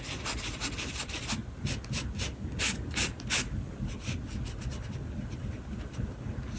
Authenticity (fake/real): real